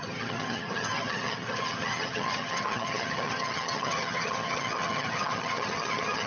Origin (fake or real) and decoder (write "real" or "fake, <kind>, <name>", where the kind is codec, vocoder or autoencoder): fake, vocoder, HiFi-GAN